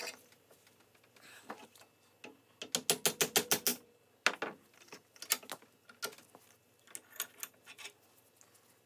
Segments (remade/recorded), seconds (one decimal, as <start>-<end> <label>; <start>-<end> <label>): 0.0-8.9 recorded